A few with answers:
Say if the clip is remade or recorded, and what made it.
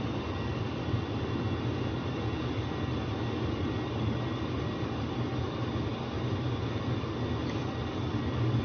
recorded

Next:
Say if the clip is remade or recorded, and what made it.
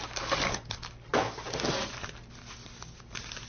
recorded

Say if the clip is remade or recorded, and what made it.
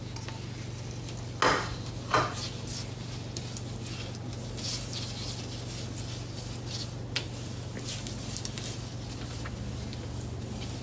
recorded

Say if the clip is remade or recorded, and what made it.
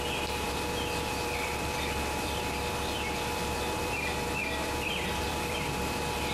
remade, vocoder, BigVGAN v2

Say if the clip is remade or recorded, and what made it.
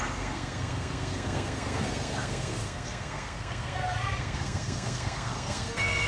remade, codec, SNAC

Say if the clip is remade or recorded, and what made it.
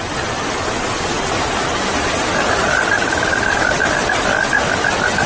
recorded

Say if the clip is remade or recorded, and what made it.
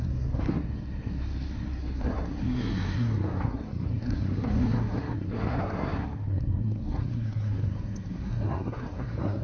remade, codec, SNAC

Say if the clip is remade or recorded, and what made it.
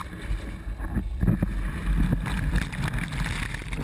recorded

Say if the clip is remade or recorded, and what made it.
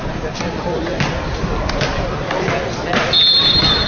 recorded